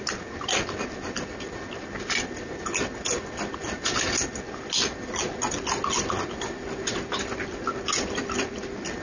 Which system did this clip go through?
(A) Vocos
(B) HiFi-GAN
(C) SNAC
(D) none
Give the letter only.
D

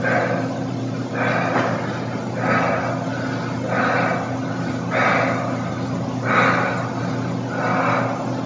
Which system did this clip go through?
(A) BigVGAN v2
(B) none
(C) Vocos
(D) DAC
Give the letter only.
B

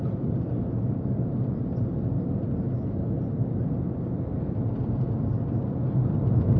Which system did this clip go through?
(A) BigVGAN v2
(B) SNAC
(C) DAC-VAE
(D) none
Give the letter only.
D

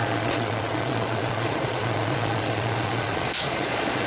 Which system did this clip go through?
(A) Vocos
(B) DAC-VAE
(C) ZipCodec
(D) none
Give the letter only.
A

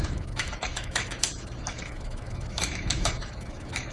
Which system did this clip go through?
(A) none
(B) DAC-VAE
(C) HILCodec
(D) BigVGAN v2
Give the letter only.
B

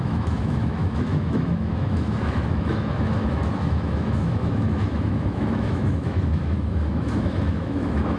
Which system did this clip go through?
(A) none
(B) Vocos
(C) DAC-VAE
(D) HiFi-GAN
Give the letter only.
C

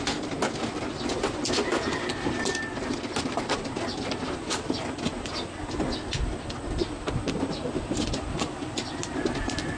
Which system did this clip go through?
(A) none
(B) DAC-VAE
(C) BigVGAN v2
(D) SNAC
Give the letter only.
A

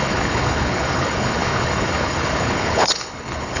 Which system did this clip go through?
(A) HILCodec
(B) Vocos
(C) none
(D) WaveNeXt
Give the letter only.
A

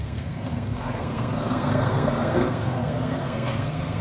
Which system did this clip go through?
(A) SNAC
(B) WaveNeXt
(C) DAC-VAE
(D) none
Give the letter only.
A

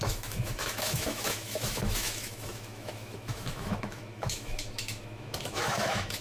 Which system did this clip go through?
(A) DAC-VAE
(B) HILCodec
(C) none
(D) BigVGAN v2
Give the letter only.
A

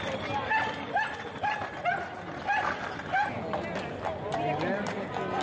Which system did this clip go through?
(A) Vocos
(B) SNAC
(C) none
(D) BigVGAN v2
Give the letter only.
C